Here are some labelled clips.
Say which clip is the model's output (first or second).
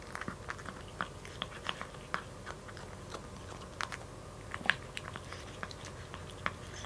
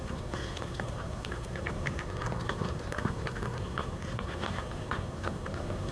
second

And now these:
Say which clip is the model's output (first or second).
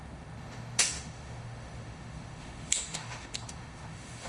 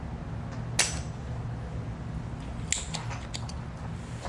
first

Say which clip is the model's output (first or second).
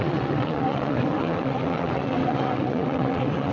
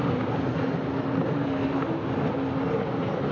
first